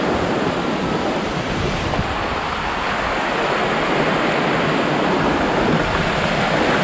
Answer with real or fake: real